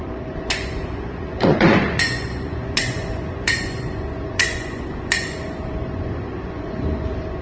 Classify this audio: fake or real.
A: fake